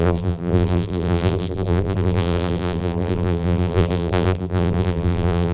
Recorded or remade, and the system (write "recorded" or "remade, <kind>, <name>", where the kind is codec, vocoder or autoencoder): remade, vocoder, BigVGAN v2